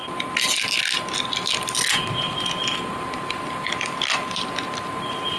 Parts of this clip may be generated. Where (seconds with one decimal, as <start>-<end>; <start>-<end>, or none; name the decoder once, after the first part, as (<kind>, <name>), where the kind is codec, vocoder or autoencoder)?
none